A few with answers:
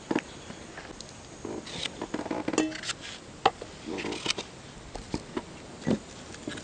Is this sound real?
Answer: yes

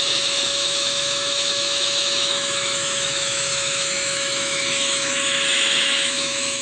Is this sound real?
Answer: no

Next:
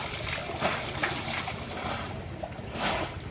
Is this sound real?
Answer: yes